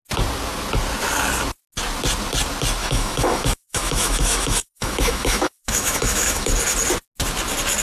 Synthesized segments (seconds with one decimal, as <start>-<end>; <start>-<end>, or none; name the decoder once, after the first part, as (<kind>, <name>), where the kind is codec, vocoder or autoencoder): 2.8-6.5 (autoencoder, DAC-VAE)